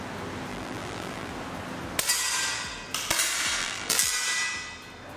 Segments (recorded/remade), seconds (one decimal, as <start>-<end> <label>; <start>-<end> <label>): 0.0-0.5 recorded; 0.5-1.3 remade; 1.3-3.6 recorded; 3.6-4.1 remade; 4.1-5.2 recorded